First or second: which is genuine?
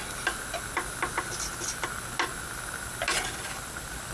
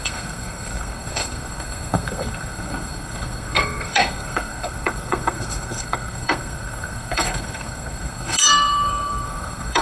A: first